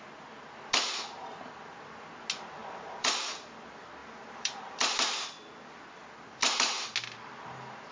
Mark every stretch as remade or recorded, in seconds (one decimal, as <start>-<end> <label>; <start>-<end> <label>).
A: 0.0-2.6 recorded; 2.6-3.6 remade; 3.6-4.0 recorded; 4.0-5.5 remade; 5.5-7.9 recorded